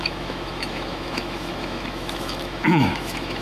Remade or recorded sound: remade